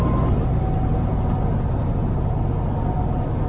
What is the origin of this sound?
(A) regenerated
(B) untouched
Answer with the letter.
B